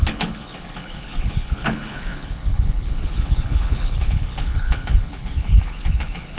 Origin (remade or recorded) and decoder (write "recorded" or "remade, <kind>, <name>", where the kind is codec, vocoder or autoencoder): remade, codec, HILCodec